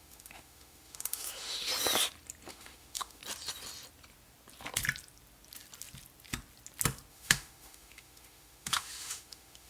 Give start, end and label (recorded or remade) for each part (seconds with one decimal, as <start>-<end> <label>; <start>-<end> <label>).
0.0-1.7 remade; 1.7-2.5 recorded; 2.5-3.2 remade; 3.2-7.1 recorded; 7.1-9.7 remade